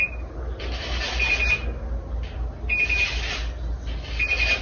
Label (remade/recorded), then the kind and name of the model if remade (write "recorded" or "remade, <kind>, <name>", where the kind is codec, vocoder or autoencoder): recorded